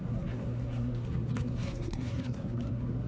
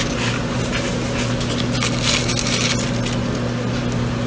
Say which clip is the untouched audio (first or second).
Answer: second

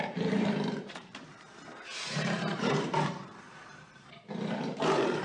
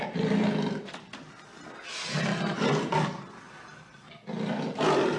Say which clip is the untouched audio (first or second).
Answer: second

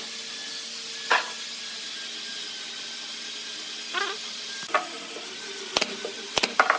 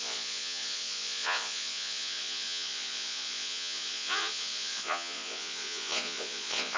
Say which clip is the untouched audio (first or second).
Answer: first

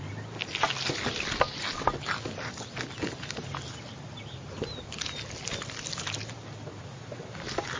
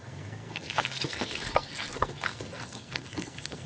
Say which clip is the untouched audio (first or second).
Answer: first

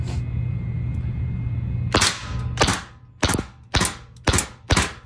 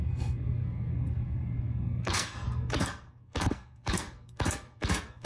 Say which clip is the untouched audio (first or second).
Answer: first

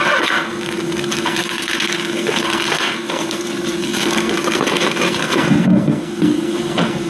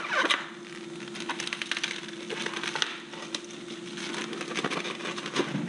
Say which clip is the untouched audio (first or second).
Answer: second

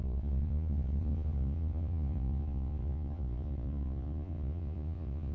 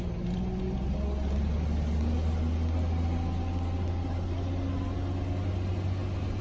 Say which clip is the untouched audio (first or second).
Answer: second